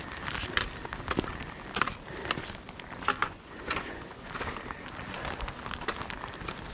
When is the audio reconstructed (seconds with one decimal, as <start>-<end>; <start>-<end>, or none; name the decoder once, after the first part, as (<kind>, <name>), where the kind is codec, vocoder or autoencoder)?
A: 3.2-4.3 (vocoder, Vocos)